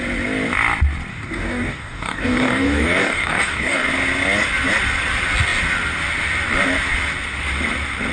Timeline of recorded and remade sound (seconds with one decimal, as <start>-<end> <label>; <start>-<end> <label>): 0.0-1.1 recorded; 1.1-3.9 remade; 3.9-8.1 recorded